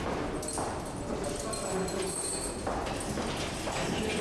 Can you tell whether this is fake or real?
real